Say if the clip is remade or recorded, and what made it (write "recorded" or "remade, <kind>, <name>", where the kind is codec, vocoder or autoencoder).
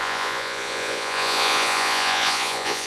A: remade, vocoder, Vocos